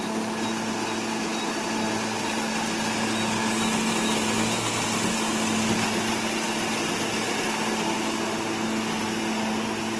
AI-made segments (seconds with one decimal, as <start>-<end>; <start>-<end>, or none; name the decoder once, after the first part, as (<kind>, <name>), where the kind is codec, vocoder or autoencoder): none